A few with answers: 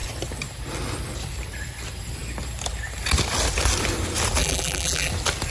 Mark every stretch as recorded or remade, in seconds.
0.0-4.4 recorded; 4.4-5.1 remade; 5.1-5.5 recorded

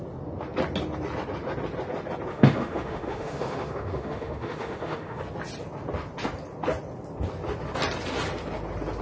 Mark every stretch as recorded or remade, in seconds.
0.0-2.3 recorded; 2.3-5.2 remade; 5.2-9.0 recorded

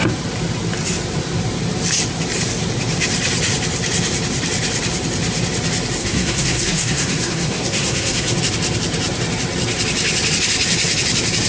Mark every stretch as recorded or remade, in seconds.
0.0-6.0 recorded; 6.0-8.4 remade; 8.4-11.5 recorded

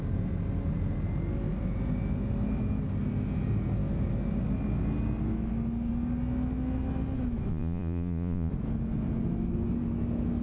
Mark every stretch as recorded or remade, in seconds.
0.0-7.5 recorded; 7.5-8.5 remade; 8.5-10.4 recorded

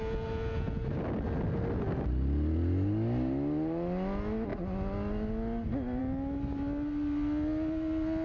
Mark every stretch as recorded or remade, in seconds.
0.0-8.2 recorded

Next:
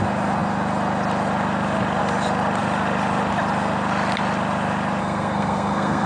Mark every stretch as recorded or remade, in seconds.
0.0-5.0 recorded; 5.0-6.1 remade